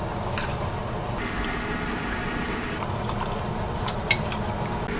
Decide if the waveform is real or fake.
real